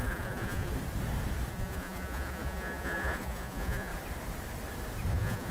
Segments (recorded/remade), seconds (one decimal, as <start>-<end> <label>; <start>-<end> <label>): 0.0-0.7 remade; 0.7-1.5 recorded; 1.5-3.9 remade; 3.9-5.1 recorded; 5.1-5.5 remade